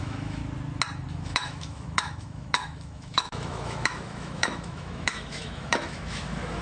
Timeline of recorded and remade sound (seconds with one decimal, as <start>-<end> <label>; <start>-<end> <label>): 0.0-0.4 remade; 0.4-1.1 recorded; 1.1-6.6 remade